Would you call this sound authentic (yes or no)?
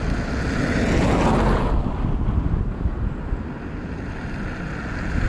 yes